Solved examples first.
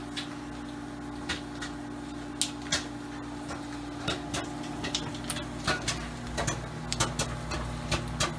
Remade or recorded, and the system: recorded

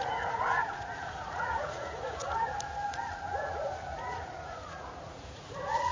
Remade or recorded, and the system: remade, vocoder, Vocos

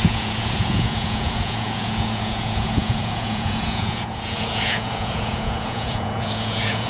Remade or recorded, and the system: remade, vocoder, Vocos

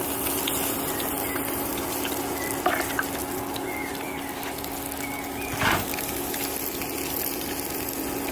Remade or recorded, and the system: recorded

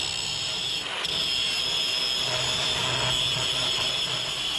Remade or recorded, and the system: recorded